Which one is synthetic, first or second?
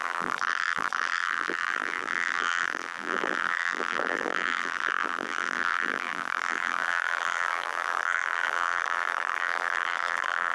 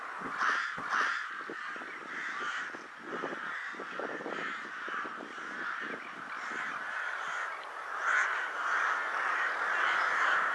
first